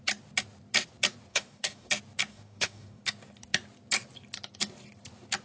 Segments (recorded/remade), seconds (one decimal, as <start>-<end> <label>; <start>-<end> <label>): 0.0-1.3 recorded; 1.3-1.9 remade; 1.9-2.3 recorded; 2.3-3.0 remade; 3.0-5.4 recorded